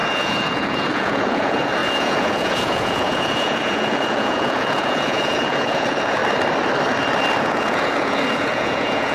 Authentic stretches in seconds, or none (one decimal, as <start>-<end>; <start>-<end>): 6.2-7.4